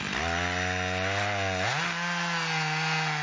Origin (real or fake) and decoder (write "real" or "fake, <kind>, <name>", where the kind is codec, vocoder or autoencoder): real